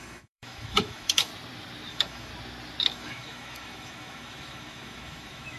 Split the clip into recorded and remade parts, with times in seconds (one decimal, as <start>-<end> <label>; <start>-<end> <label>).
0.0-1.3 remade; 1.3-1.9 recorded; 1.9-2.3 remade; 2.3-2.8 recorded; 2.8-5.6 remade